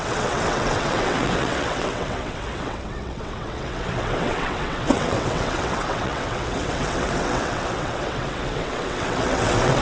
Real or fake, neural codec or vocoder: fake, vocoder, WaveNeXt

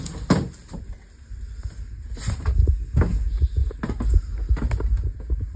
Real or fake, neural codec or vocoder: real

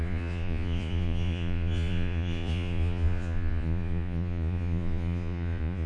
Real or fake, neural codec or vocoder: fake, vocoder, Vocos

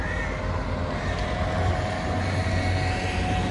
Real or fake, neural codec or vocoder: real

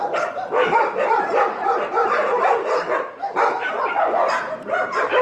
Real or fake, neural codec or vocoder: real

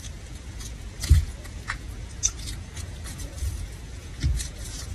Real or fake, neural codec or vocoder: fake, vocoder, Vocos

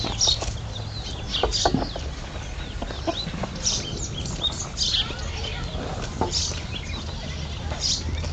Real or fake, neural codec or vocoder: real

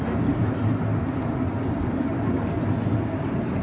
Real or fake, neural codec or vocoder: real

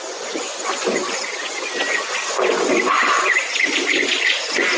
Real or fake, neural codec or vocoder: fake, vocoder, Vocos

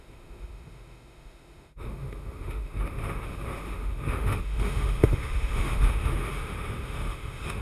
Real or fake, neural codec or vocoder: fake, autoencoder, DAC-VAE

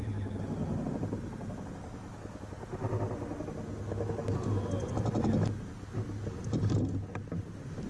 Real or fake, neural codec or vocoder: real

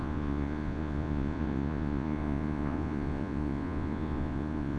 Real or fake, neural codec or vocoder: fake, vocoder, Vocos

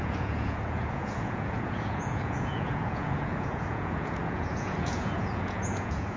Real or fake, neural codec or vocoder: fake, vocoder, Vocos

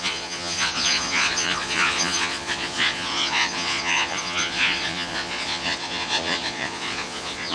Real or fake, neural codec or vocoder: fake, vocoder, Vocos